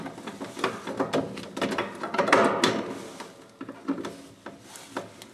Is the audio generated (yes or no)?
no